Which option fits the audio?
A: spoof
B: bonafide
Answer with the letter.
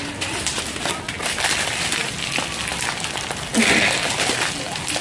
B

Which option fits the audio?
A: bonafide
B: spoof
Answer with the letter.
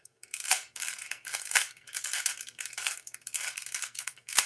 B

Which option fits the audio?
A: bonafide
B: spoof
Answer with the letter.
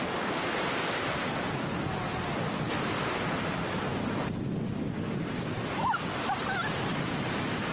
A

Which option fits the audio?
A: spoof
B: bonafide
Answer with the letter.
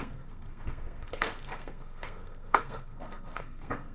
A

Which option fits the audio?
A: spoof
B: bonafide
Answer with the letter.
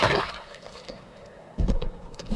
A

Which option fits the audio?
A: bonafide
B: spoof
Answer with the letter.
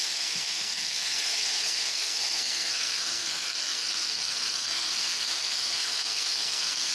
B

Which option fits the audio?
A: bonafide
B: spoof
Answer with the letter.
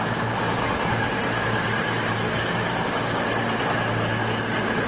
A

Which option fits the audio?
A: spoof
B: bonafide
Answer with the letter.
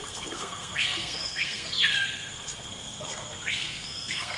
A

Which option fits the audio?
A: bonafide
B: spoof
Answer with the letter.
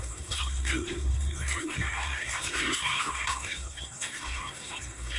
B